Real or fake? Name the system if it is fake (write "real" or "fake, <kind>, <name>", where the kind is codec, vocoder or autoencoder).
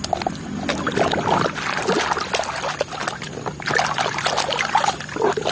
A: real